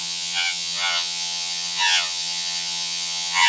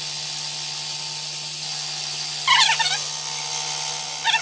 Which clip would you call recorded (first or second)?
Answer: second